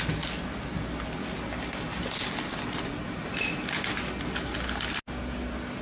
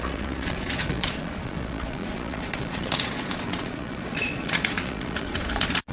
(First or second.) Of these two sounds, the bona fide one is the first